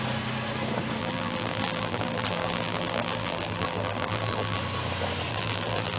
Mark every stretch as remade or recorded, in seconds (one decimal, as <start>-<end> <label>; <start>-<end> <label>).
0.0-1.0 recorded; 1.0-4.6 remade; 4.6-5.3 recorded; 5.3-6.0 remade